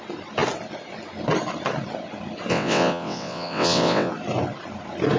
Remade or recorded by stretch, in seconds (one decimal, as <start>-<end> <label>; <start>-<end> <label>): 0.0-2.5 recorded; 2.5-4.1 remade; 4.1-5.2 recorded

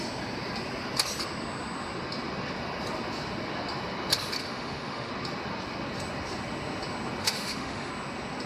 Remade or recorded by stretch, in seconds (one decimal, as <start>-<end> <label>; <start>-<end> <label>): 0.0-4.4 recorded; 4.4-5.1 remade; 5.1-7.2 recorded; 7.2-7.9 remade; 7.9-8.5 recorded

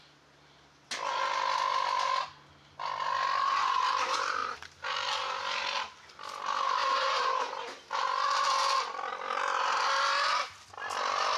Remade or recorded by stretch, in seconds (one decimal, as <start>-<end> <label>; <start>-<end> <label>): 0.0-4.4 recorded; 4.4-5.1 remade; 5.1-6.8 recorded; 6.8-7.3 remade; 7.3-11.4 recorded

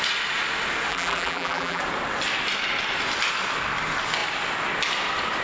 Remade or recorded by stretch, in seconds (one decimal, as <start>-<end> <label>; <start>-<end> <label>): 0.0-0.9 recorded; 0.9-1.8 remade; 1.8-5.4 recorded

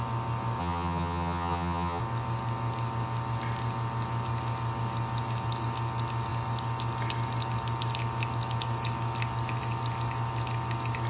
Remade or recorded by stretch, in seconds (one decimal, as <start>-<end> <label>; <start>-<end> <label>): 0.0-0.6 recorded; 0.6-2.0 remade; 2.0-11.1 recorded

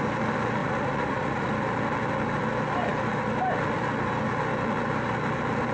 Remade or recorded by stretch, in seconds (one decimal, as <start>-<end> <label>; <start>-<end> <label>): 0.0-0.6 recorded; 0.6-1.5 remade; 1.5-5.7 recorded